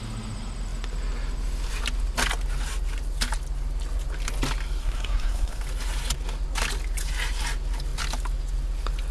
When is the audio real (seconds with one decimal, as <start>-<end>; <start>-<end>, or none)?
0.0-4.8; 5.6-9.1